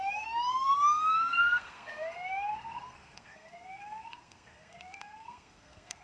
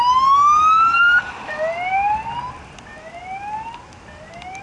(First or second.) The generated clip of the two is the first